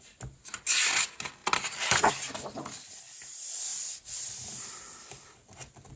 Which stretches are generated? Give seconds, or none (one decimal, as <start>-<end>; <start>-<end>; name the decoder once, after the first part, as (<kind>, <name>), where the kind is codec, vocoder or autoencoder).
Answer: none

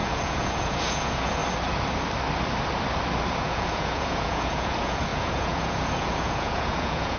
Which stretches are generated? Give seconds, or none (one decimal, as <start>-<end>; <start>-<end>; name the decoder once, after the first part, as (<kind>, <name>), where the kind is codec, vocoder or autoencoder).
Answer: 0.0-1.4 (vocoder, Vocos); 3.3-7.2

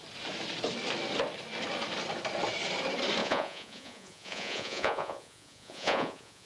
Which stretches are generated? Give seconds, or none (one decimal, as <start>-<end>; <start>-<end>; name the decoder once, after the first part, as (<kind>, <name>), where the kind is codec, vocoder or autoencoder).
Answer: 3.2-6.5 (vocoder, Vocos)

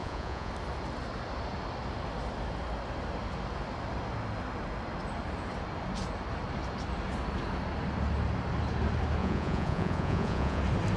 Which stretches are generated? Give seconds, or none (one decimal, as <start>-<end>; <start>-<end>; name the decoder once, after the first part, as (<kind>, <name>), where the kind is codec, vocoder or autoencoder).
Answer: 0.0-0.5 (vocoder, Vocos); 9.2-10.6

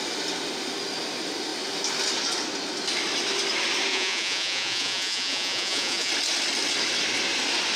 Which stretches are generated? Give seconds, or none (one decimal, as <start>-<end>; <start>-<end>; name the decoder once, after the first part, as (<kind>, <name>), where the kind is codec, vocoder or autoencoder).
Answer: 3.9-6.1 (vocoder, Vocos)

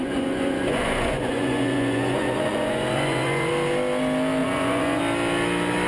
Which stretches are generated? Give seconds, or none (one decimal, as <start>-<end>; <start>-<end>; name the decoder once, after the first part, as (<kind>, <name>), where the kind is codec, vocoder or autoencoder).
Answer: 0.0-3.5 (vocoder, Vocos); 4.4-5.0

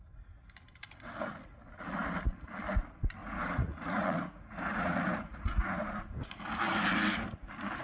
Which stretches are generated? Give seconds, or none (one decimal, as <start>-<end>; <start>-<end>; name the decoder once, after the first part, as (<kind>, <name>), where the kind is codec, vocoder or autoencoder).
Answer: 3.2-6.4 (vocoder, Vocos)

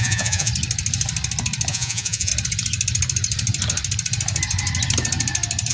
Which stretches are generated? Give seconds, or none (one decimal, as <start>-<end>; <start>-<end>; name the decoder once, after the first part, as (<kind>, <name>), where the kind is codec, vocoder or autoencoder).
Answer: 0.0-0.5 (vocoder, Vocos); 1.7-2.3